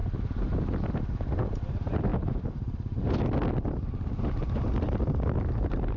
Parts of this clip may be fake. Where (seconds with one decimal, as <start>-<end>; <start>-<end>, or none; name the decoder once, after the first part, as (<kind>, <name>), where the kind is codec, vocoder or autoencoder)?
none

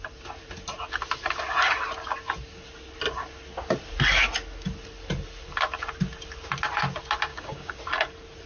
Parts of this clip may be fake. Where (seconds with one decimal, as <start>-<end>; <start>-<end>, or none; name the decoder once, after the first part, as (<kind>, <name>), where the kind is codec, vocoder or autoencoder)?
7.3-7.8 (codec, DAC)

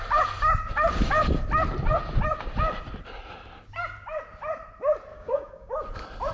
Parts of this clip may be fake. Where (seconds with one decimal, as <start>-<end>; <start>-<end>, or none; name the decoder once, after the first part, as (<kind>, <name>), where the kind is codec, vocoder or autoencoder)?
5.1-5.7 (codec, DAC)

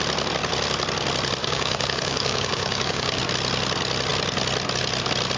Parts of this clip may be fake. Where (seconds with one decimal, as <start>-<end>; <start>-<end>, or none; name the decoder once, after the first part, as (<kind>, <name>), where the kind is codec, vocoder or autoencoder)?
1.4-3.2 (codec, DAC)

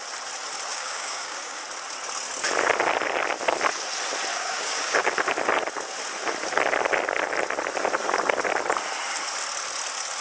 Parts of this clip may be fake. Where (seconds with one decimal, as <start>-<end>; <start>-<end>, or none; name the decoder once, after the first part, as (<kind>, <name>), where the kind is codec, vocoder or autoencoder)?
0.7-1.6 (codec, DAC); 4.3-5.1

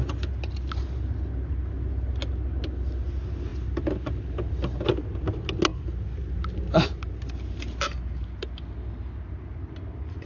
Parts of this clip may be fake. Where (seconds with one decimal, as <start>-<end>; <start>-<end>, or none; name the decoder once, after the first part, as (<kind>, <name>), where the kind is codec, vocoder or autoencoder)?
none

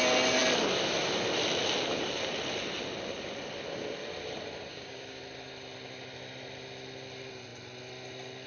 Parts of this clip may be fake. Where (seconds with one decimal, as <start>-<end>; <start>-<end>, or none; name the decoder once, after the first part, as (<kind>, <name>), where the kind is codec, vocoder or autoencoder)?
4.7-5.2 (codec, DAC)